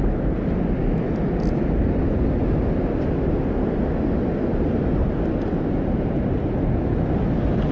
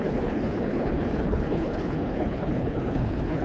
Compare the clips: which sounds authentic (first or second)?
first